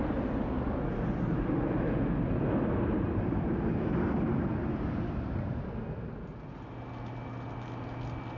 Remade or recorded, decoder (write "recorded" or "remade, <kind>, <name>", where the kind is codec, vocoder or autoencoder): recorded